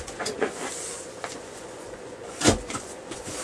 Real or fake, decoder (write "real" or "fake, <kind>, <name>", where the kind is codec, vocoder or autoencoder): fake, vocoder, Vocos